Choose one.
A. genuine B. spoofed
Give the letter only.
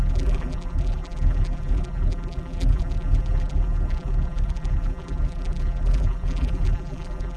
B